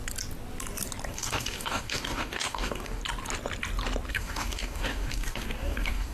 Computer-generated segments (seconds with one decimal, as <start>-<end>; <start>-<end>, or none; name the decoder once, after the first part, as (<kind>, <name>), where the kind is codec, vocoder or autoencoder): 1.1-3.0 (codec, DAC); 4.1-6.1